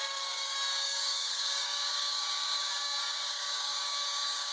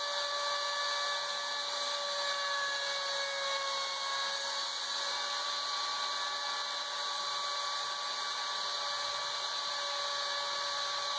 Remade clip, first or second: first